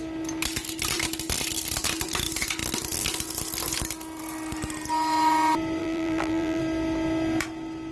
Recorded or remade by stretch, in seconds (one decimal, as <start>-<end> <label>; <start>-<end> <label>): 0.0-5.8 recorded; 5.8-6.6 remade; 6.6-7.9 recorded

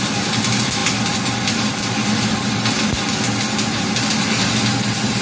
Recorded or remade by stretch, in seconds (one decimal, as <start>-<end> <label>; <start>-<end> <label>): 0.0-5.2 recorded

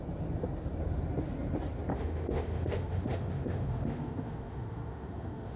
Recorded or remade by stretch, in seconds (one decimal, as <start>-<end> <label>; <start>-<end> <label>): 0.0-1.9 recorded; 1.9-5.6 remade

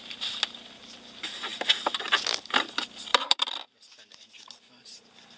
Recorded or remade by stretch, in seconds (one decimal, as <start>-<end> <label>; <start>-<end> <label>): 0.0-1.5 recorded; 1.5-2.0 remade; 2.0-3.1 recorded; 3.1-3.7 remade; 3.7-5.4 recorded

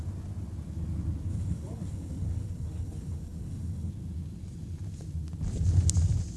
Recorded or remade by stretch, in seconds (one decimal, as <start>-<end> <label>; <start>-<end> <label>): 0.0-1.3 recorded; 1.3-3.9 remade; 3.9-6.4 recorded